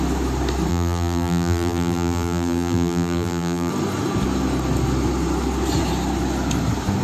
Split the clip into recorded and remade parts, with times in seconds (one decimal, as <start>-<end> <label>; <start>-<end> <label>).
0.0-0.7 recorded; 0.7-3.7 remade; 3.7-7.0 recorded